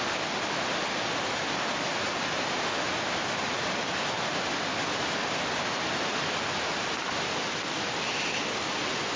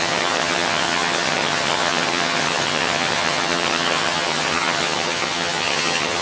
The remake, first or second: second